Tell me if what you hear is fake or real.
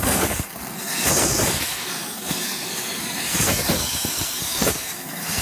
fake